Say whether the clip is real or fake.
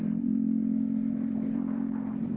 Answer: fake